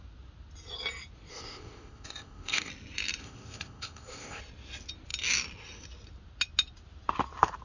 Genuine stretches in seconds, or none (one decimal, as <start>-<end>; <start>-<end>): 0.0-1.3; 2.7-3.2; 4.4-7.6